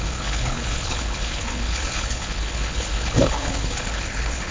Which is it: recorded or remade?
remade